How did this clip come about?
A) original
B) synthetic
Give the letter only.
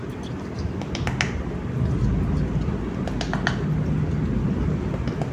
A